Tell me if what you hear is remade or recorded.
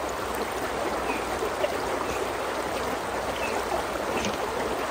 recorded